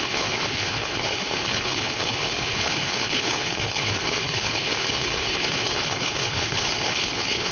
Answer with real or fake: fake